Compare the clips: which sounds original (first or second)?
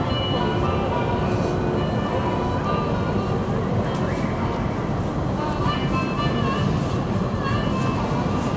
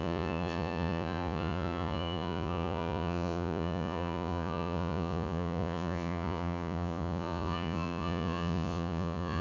first